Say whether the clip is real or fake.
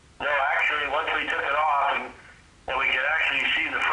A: real